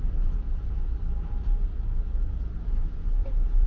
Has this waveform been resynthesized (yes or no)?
no